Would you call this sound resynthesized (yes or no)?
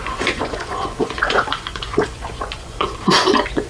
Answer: yes